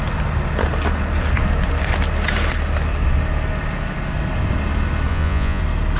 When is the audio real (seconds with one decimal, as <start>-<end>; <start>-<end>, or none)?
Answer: 0.0-5.1; 5.6-6.0